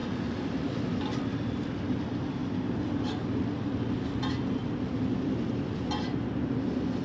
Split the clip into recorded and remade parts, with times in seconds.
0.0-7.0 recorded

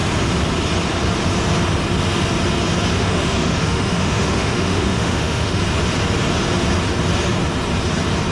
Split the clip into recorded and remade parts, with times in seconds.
0.0-3.0 recorded; 3.0-5.6 remade; 5.6-8.3 recorded

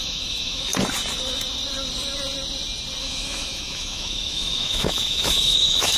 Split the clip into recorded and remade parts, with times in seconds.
0.0-0.7 remade; 0.7-3.0 recorded; 3.0-6.0 remade

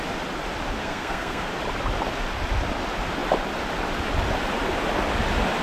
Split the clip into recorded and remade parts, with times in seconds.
0.0-0.8 recorded; 0.8-1.5 remade; 1.5-5.6 recorded